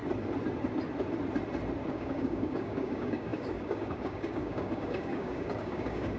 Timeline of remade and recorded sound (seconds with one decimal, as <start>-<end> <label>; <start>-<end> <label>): 0.0-1.9 recorded; 1.9-6.2 remade